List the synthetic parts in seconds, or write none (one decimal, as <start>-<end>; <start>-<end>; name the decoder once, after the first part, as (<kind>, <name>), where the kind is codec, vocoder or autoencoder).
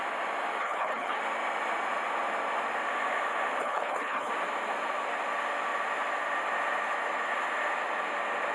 0.6-1.2 (codec, HILCodec); 3.6-4.3